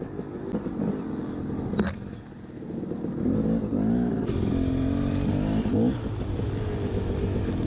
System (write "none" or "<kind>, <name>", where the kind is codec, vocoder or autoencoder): none